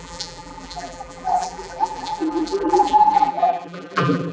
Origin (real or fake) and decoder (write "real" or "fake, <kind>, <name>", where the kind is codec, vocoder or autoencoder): fake, vocoder, BigVGAN v2